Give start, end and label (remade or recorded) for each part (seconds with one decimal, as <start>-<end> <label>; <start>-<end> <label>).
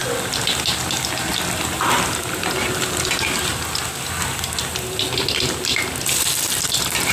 0.0-7.1 recorded